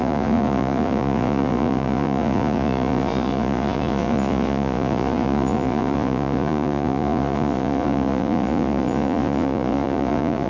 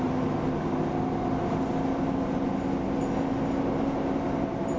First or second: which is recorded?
second